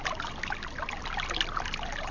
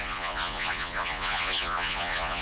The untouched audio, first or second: first